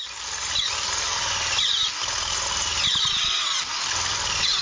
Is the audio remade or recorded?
recorded